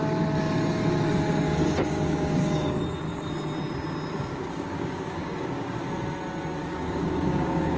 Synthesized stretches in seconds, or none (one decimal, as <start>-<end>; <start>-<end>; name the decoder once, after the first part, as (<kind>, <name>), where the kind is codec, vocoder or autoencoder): 1.3-2.8 (codec, DAC); 4.1-5.8; 6.6-7.8